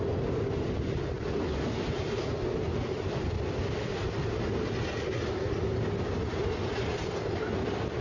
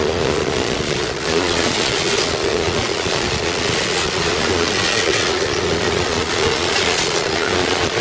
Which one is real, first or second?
first